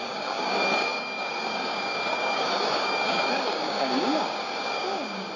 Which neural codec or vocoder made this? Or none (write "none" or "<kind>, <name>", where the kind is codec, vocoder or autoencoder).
codec, DAC